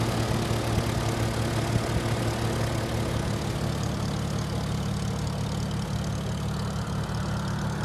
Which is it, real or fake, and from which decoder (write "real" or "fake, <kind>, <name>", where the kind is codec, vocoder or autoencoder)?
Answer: real